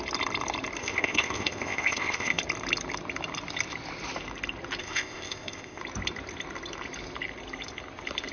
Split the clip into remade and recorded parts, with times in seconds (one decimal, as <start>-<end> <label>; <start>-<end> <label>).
0.0-0.8 recorded; 0.8-2.4 remade; 2.4-4.8 recorded; 4.8-5.8 remade; 5.8-8.3 recorded